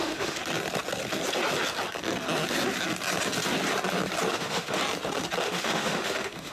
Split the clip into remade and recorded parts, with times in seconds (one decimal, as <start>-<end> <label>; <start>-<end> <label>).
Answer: 0.0-0.4 remade; 0.4-4.3 recorded; 4.3-4.8 remade; 4.8-5.4 recorded; 5.4-6.5 remade